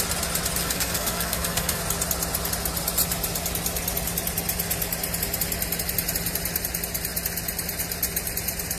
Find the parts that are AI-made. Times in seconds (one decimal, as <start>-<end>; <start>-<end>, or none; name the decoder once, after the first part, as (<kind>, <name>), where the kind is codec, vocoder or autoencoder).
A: 0.6-1.8 (codec, SNAC)